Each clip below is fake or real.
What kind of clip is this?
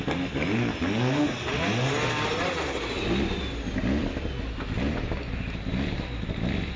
real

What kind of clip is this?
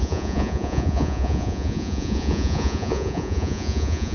fake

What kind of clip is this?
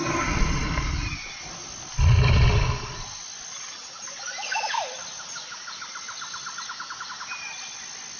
real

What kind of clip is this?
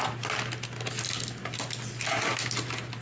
real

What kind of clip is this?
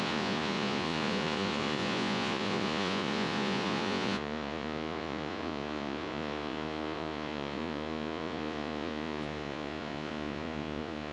fake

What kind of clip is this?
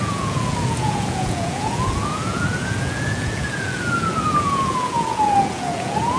fake